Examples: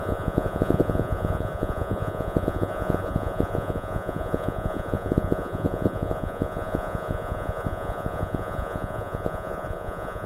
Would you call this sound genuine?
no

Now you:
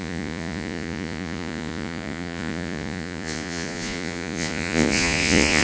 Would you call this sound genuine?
no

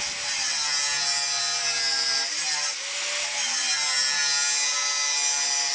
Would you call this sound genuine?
yes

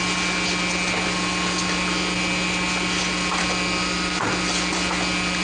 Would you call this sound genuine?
yes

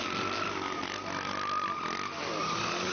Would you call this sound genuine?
yes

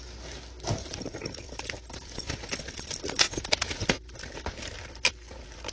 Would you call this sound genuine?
yes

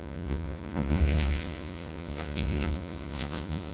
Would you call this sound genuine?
no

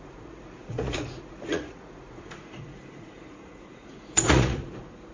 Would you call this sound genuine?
no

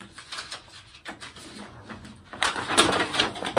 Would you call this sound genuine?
no